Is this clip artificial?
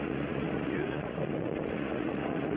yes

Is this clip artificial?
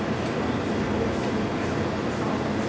no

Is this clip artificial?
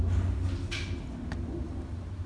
no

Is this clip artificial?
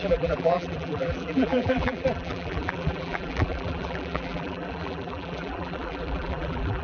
yes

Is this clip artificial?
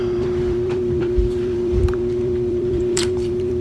yes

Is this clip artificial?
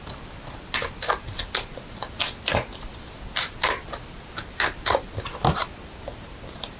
no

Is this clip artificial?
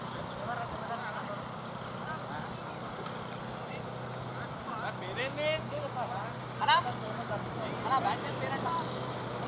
no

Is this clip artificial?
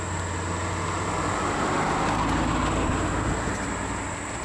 no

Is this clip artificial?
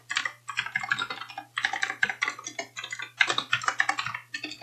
no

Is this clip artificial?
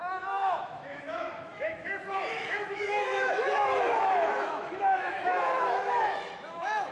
yes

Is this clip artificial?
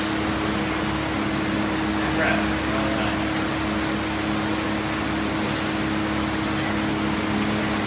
no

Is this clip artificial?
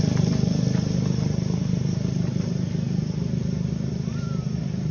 no